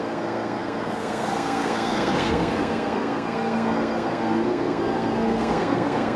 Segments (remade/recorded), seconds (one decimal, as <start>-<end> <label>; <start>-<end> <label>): 0.0-6.2 remade